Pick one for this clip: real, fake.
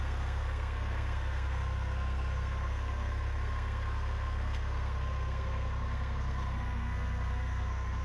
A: fake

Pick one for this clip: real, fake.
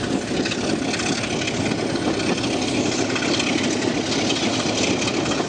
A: real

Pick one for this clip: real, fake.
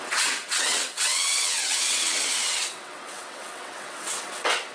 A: fake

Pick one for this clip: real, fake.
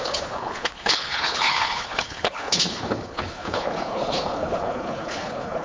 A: fake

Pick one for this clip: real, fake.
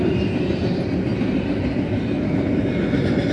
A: real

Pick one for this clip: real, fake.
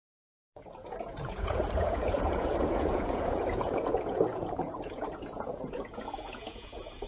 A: fake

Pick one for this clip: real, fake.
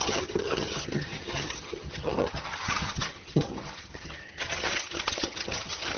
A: fake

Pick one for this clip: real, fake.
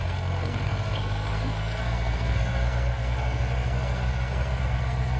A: fake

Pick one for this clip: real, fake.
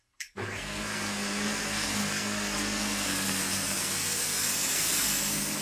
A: fake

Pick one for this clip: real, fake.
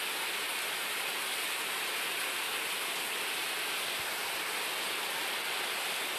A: real